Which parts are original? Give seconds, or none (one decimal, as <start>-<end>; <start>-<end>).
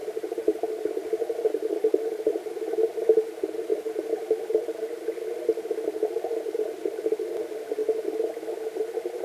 0.0-9.2